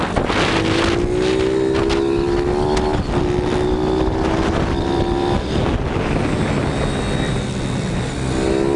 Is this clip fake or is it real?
real